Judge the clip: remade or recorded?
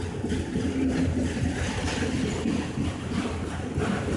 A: recorded